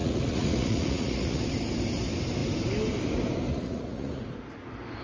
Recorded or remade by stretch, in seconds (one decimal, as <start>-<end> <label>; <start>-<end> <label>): 0.0-1.4 remade; 1.4-3.5 recorded; 3.5-4.2 remade; 4.2-5.0 recorded

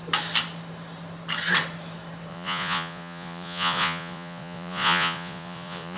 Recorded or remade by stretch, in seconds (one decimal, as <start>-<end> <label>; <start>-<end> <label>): 0.0-2.3 recorded; 2.3-6.0 remade

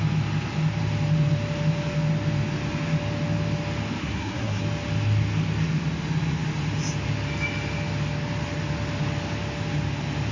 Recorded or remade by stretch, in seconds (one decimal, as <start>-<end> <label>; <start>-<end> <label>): 0.0-4.0 recorded; 4.0-4.6 remade; 4.6-10.3 recorded

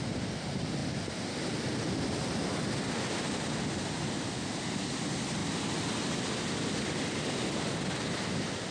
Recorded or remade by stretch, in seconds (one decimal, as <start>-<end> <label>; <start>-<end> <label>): 0.0-8.7 recorded

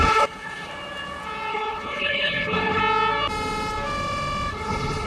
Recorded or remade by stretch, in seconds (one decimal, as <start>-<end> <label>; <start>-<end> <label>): 0.0-0.7 remade; 0.7-1.5 recorded; 1.5-2.8 remade; 2.8-4.5 recorded; 4.5-5.1 remade

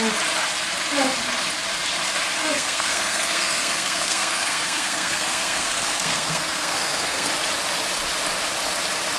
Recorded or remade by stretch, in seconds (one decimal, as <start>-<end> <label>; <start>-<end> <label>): 0.0-2.4 recorded; 2.4-7.3 remade; 7.3-9.2 recorded

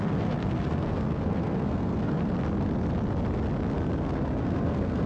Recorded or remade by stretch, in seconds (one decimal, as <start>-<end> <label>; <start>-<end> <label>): 0.0-2.2 remade; 2.2-4.0 recorded; 4.0-5.1 remade

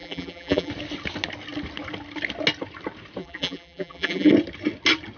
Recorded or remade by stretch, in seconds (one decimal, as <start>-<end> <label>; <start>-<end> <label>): 0.0-0.7 remade; 0.7-3.2 recorded; 3.2-4.3 remade; 4.3-5.2 recorded